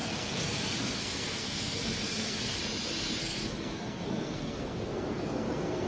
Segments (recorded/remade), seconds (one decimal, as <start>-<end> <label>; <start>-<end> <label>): 0.0-2.6 remade; 2.6-3.2 recorded; 3.2-5.9 remade